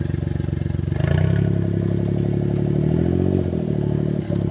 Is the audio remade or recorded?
recorded